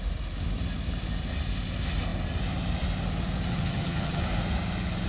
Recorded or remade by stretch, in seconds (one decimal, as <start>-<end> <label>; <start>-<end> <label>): 0.0-3.5 recorded; 3.5-4.2 remade; 4.2-5.1 recorded